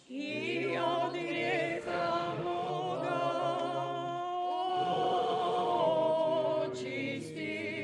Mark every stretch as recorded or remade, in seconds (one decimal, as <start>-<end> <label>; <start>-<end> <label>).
0.0-1.7 recorded; 1.7-2.7 remade; 2.7-4.7 recorded; 4.7-5.8 remade; 5.8-7.8 recorded